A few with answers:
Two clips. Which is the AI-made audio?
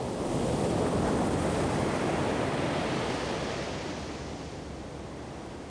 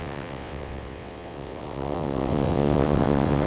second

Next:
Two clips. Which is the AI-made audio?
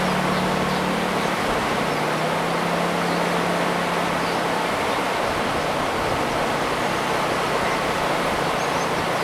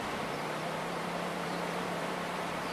second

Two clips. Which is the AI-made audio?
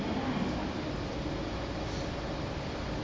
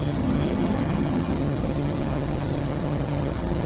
second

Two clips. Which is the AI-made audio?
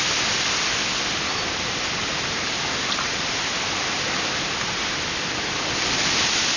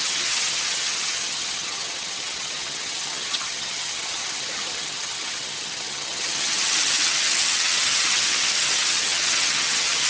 second